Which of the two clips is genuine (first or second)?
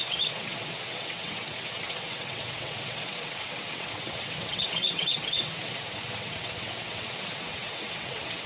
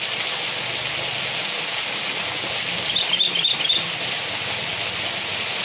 second